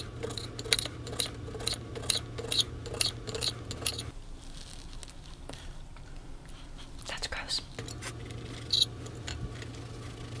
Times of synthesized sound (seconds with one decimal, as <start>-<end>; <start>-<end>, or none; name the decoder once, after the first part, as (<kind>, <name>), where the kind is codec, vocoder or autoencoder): none